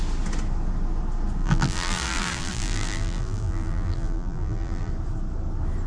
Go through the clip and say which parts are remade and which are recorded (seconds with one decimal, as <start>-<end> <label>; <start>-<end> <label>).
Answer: 0.0-1.4 recorded; 1.4-4.9 remade; 4.9-5.9 recorded